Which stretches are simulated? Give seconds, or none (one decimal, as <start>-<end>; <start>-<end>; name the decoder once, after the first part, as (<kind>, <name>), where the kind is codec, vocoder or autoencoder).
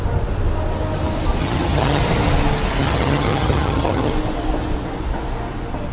1.4-2.0 (vocoder, HiFi-GAN); 2.8-4.1